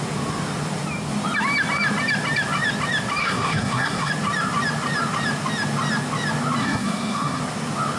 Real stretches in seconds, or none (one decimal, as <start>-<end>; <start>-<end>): 0.0-3.2; 4.1-6.6; 7.4-8.0